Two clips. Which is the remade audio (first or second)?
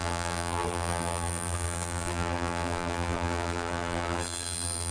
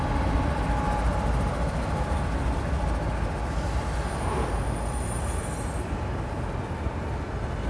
first